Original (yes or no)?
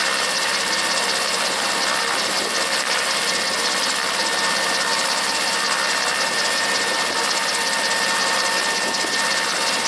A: yes